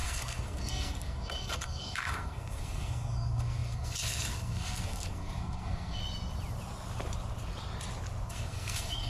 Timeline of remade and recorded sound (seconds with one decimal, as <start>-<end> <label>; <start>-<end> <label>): 0.0-6.0 remade; 6.0-8.3 recorded; 8.3-9.1 remade

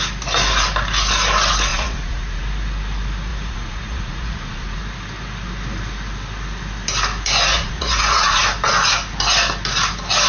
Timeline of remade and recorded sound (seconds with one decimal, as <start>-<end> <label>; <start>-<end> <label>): 0.0-1.7 recorded; 1.7-2.4 remade; 2.4-3.3 recorded; 3.3-4.8 remade; 4.8-7.5 recorded; 7.5-8.4 remade; 8.4-10.3 recorded

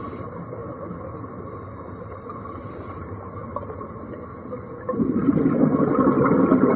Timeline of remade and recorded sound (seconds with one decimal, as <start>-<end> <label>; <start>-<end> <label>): 0.0-6.8 recorded

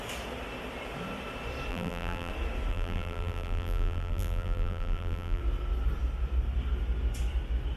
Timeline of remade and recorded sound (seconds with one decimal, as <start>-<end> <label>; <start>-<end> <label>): 0.0-1.7 recorded; 1.7-2.3 remade; 2.3-2.7 recorded; 2.7-5.4 remade; 5.4-7.8 recorded

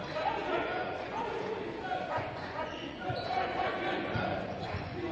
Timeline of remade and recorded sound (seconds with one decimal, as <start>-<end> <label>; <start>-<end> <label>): 0.0-0.4 recorded; 0.4-1.2 remade; 1.2-1.9 recorded; 1.9-5.1 remade

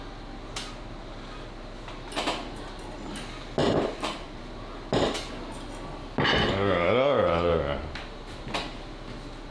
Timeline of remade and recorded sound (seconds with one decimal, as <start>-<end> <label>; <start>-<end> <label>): 0.0-3.6 recorded; 3.6-4.4 remade; 4.4-9.5 recorded